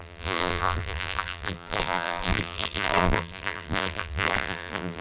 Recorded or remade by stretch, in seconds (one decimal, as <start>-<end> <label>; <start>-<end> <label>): 0.0-5.0 remade